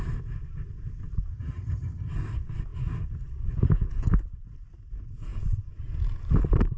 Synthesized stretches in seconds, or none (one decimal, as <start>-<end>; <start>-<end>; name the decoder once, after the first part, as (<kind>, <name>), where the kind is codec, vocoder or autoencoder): 1.3-2.1 (vocoder, HiFi-GAN)